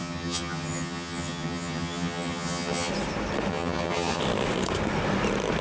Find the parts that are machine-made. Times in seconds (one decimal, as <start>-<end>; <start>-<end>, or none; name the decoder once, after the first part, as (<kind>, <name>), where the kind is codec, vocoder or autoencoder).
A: 0.0-2.9 (vocoder, HiFi-GAN); 3.5-4.2